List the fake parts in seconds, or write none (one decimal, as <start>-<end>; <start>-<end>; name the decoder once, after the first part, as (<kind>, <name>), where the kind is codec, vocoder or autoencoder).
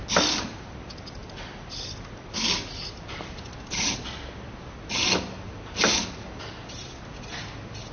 none